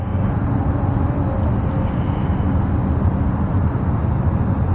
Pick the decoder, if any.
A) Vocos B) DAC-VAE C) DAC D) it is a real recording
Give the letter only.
D